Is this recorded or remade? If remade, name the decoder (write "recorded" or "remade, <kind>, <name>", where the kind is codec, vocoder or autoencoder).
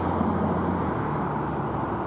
recorded